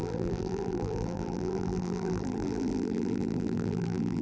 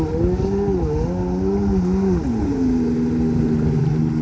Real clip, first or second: second